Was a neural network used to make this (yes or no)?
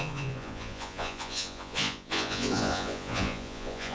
yes